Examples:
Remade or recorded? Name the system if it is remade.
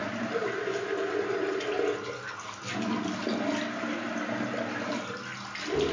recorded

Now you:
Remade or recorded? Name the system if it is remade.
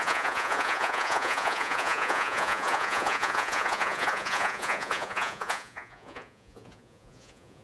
remade, vocoder, Vocos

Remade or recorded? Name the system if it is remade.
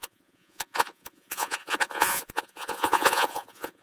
remade, vocoder, Vocos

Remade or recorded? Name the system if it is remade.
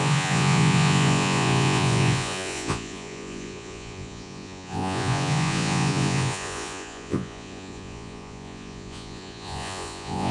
remade, vocoder, Vocos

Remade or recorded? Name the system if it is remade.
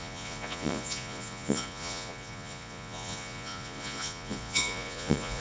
remade, vocoder, Vocos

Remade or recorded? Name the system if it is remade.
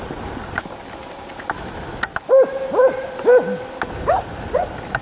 recorded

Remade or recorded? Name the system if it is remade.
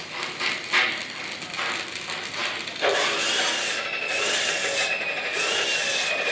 recorded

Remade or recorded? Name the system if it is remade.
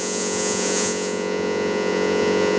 remade, vocoder, Vocos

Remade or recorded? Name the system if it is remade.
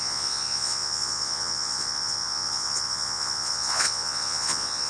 remade, vocoder, Vocos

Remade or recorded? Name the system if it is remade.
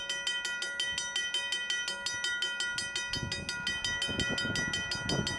recorded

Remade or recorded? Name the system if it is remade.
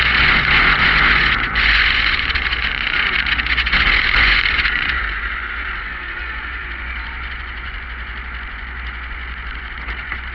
remade, vocoder, Vocos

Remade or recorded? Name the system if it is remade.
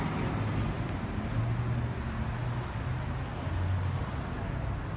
recorded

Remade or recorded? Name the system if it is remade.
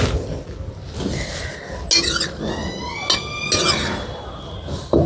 recorded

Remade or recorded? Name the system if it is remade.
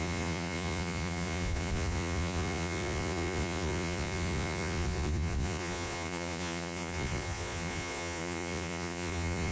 remade, vocoder, Vocos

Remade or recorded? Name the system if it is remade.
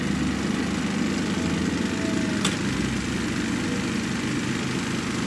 recorded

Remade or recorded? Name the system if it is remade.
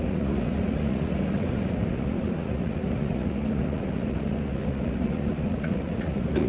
remade, vocoder, Vocos